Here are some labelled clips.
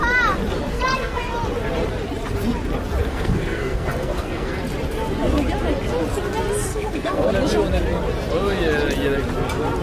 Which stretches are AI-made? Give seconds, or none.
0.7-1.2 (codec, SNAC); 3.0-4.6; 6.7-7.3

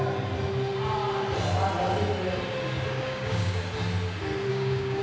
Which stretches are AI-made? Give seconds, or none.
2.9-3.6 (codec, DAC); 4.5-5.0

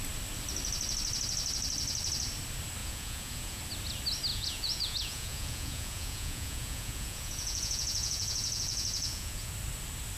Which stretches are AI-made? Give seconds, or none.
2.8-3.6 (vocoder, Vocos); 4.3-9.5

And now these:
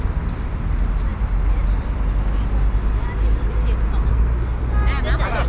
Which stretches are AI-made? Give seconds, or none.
4.1-4.6 (codec, SNAC)

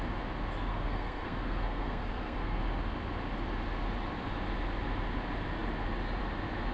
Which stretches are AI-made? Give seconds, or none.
0.7-2.6 (codec, SNAC)

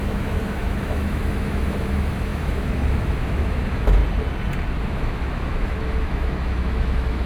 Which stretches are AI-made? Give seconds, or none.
0.0-4.0 (autoencoder, DAC-VAE); 4.8-7.3